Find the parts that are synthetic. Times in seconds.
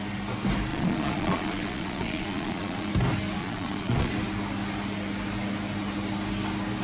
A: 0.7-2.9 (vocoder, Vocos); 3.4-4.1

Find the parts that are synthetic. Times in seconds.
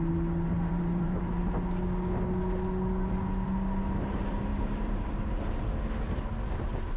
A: 0.7-1.4 (vocoder, BigVGAN v2); 4.5-5.7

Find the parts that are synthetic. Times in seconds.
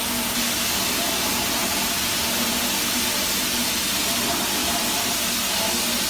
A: 1.7-3.9 (vocoder, BigVGAN v2); 4.6-5.4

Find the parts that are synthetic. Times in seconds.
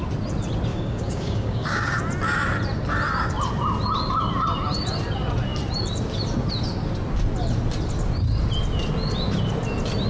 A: 0.7-2.0 (codec, DAC)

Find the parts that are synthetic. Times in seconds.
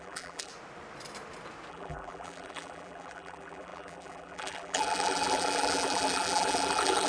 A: 0.0-0.5 (vocoder, BigVGAN v2); 1.7-7.1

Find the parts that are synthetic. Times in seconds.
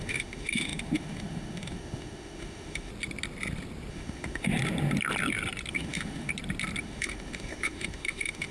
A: 0.0-2.9 (autoencoder, DAC-VAE); 3.9-4.5; 5.7-6.3; 6.8-8.5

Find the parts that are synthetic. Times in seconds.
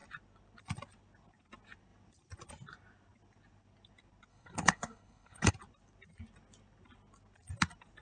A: 4.3-5.5 (codec, HILCodec)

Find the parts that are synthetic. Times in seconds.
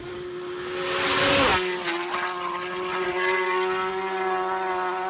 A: none